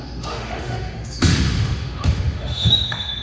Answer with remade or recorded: remade